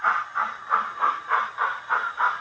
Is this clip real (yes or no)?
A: yes